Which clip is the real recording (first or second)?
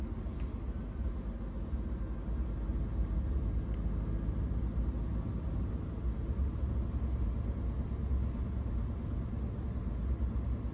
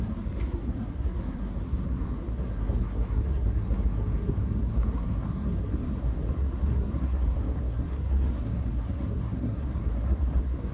first